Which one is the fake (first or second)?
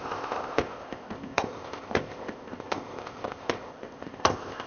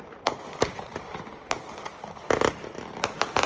first